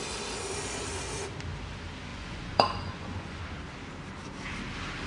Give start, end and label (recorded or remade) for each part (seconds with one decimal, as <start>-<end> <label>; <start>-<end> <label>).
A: 0.0-2.1 recorded; 2.1-3.4 remade; 3.4-5.1 recorded